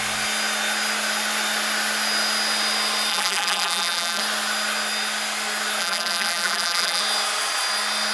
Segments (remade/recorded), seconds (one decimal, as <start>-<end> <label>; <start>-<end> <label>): 0.0-3.1 recorded; 3.1-4.2 remade; 4.2-5.8 recorded; 5.8-7.0 remade; 7.0-8.1 recorded